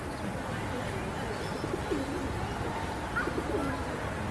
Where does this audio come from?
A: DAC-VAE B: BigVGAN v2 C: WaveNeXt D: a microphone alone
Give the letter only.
D